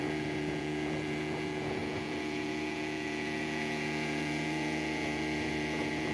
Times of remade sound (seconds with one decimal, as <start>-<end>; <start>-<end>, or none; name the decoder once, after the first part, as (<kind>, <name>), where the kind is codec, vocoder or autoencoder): 0.0-6.1 (vocoder, Vocos)